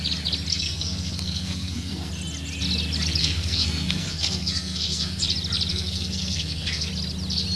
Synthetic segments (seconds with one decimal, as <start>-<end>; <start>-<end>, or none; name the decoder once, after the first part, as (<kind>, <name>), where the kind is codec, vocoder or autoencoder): 0.5-2.1 (codec, SNAC); 3.2-5.2; 5.7-6.9